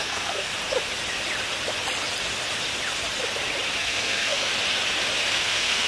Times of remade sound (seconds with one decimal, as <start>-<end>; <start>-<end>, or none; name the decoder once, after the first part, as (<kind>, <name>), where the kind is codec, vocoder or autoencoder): 0.0-0.5 (codec, SNAC); 3.8-4.5; 5.3-5.9

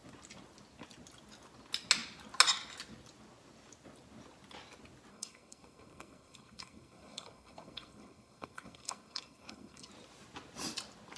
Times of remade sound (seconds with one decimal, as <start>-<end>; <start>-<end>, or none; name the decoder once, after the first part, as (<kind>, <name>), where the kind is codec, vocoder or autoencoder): 5.1-9.9 (codec, SNAC)

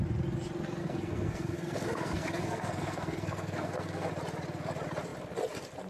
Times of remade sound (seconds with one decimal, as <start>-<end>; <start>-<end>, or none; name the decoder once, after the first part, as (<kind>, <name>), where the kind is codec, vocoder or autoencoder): 0.8-4.1 (codec, SNAC)

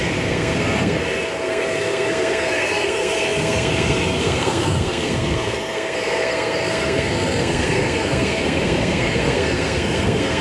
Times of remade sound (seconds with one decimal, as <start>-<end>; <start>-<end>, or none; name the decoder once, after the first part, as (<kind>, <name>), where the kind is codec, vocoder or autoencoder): 0.0-10.4 (codec, SNAC)